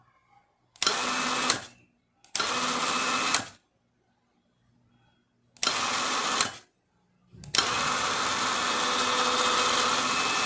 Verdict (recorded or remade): recorded